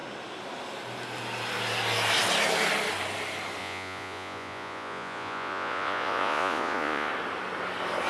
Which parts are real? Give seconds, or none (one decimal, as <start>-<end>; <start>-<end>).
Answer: 0.0-3.6; 7.1-8.1